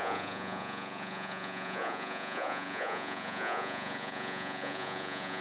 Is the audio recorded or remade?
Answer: remade